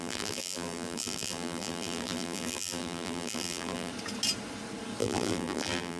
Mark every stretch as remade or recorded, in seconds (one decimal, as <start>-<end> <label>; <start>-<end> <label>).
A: 0.0-3.9 remade; 3.9-5.0 recorded; 5.0-6.0 remade